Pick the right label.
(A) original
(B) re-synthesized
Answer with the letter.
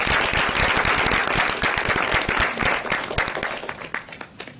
A